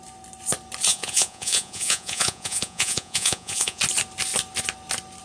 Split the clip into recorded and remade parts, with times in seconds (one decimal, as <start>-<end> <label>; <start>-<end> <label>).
0.0-0.9 recorded; 0.9-3.8 remade; 3.8-5.2 recorded